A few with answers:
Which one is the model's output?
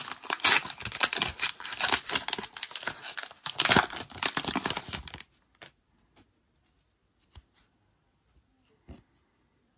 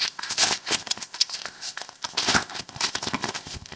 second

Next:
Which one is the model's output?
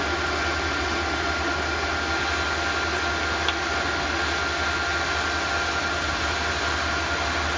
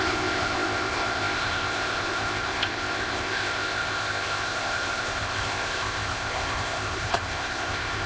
second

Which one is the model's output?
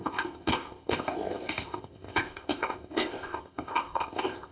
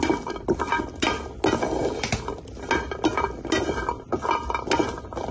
first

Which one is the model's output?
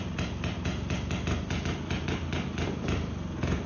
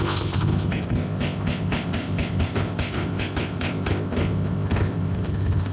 second